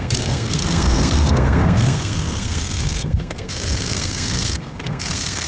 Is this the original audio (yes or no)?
no